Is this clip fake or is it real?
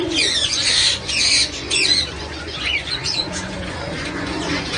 fake